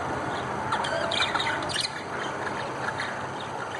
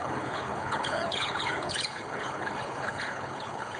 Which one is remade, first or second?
second